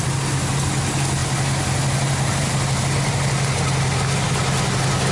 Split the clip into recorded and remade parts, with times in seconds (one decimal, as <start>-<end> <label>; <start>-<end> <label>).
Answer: 0.0-5.1 recorded